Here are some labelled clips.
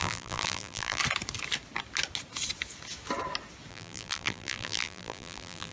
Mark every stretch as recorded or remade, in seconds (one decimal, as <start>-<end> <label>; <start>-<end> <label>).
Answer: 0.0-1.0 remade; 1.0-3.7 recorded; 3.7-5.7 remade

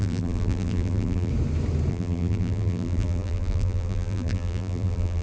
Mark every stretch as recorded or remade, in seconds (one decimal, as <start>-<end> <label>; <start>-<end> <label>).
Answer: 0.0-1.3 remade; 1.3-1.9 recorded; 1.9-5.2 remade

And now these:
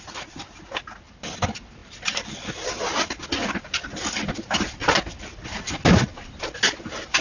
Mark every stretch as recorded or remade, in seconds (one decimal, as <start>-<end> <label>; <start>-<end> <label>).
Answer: 0.0-1.8 recorded; 1.8-2.4 remade; 2.4-4.8 recorded; 4.8-5.8 remade; 5.8-7.2 recorded

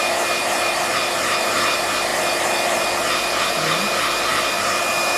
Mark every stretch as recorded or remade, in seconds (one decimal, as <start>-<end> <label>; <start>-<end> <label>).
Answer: 0.0-5.2 recorded